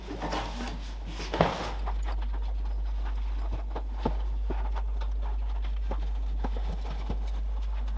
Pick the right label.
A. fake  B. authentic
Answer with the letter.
B